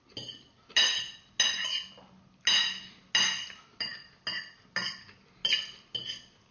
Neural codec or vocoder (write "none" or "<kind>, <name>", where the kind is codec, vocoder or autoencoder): none